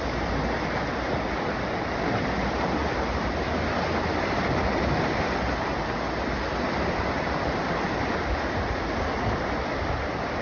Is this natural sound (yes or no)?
yes